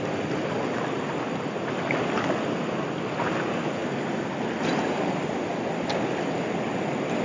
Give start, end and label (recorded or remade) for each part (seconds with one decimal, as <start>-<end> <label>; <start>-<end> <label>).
0.0-7.2 recorded

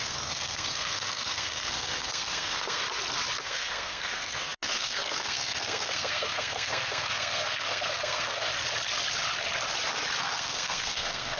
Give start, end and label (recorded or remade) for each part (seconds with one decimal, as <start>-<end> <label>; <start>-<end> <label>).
0.0-2.8 remade; 2.8-3.4 recorded; 3.4-8.5 remade; 8.5-10.2 recorded; 10.2-11.4 remade